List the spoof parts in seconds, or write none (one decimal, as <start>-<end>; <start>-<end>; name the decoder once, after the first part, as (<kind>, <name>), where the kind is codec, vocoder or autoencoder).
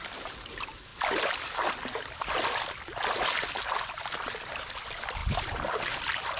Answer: 0.0-0.9 (vocoder, BigVGAN v2); 4.7-6.4